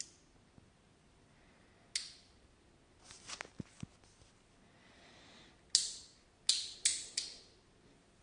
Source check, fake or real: real